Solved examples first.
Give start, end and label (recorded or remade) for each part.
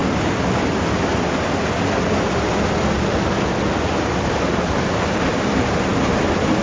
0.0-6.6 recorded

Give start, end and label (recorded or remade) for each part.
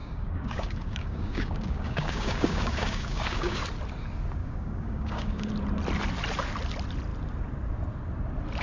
0.0-3.6 remade; 3.6-4.4 recorded; 4.4-5.5 remade; 5.5-8.6 recorded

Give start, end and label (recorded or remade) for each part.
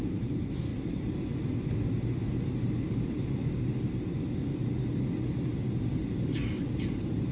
0.0-0.7 remade; 0.7-2.3 recorded; 2.3-3.4 remade; 3.4-6.1 recorded; 6.1-7.3 remade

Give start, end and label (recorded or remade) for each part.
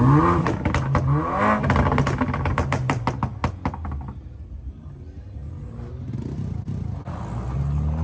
0.0-8.0 recorded